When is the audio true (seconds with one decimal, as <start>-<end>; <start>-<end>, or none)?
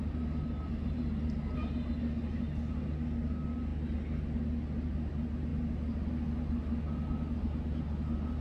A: 0.0-8.4